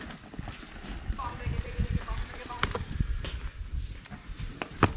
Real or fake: real